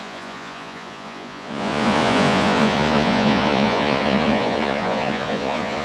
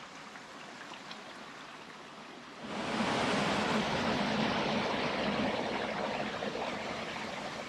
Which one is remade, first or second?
first